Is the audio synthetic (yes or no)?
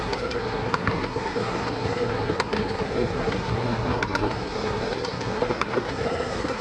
yes